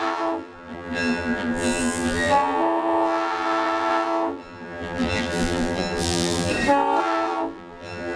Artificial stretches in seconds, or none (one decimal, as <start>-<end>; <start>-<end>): 0.0-6.5; 7.0-8.2